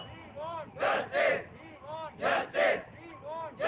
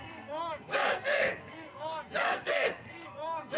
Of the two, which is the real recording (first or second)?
first